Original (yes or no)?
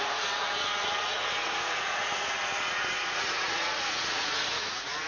no